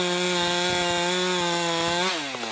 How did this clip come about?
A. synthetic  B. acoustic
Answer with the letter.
B